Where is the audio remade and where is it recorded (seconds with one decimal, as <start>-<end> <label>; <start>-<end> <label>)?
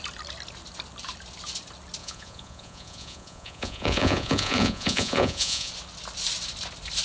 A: 0.0-2.0 recorded; 2.0-5.7 remade; 5.7-7.0 recorded